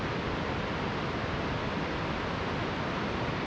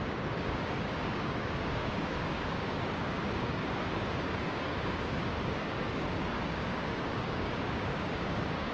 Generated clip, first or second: second